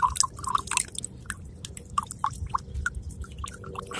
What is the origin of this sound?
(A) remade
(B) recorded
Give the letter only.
B